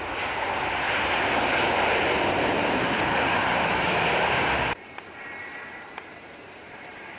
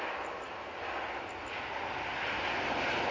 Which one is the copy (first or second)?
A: first